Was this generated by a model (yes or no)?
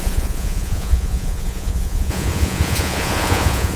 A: yes